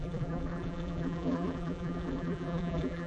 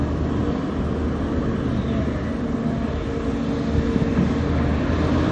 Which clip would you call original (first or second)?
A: second